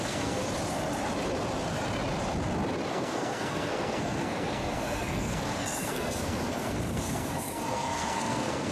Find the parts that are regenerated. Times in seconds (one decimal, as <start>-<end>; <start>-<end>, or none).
0.0-0.4; 2.9-8.7